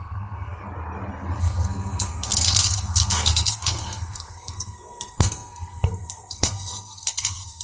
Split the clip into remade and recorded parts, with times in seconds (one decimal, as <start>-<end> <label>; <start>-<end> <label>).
0.0-0.6 remade; 0.6-1.4 recorded; 1.4-7.6 remade

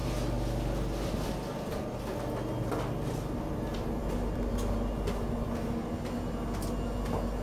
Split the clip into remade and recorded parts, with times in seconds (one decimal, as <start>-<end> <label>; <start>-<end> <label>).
0.0-7.4 recorded

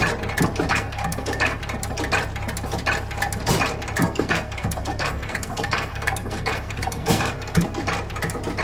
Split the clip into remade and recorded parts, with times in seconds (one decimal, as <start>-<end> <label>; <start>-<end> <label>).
0.0-0.7 recorded; 0.7-1.6 remade; 1.6-4.0 recorded; 4.0-7.8 remade; 7.8-8.6 recorded

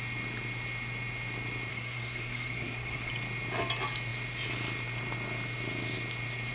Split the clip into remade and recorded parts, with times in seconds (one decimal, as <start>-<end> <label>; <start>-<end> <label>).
0.0-1.7 recorded; 1.7-3.1 remade; 3.1-6.5 recorded

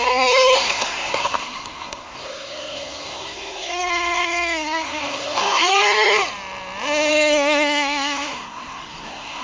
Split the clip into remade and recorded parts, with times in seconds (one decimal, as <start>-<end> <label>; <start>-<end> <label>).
0.0-6.2 remade; 6.2-7.1 recorded; 7.1-9.4 remade